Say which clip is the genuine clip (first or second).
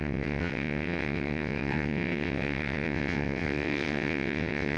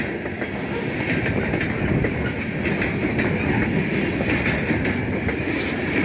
second